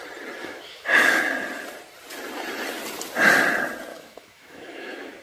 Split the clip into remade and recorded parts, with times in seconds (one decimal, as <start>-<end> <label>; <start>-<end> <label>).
0.0-0.4 recorded; 0.4-1.2 remade; 1.2-3.9 recorded; 3.9-5.2 remade